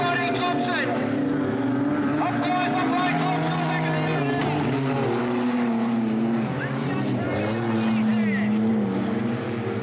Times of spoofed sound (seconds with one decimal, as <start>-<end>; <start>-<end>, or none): none